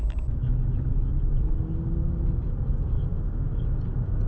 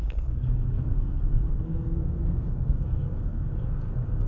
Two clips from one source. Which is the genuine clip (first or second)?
first